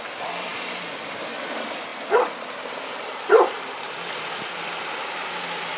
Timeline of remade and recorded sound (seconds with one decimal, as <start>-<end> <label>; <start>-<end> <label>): 0.0-0.5 recorded; 0.5-1.3 remade; 1.3-1.9 recorded; 1.9-5.2 remade; 5.2-5.8 recorded